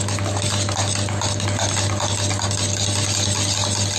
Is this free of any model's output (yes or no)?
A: yes